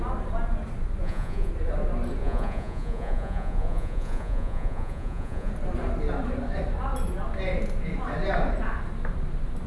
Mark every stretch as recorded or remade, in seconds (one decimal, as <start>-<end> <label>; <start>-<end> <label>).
0.0-1.0 recorded; 1.0-1.5 remade; 1.5-2.2 recorded; 2.2-5.5 remade; 5.5-9.7 recorded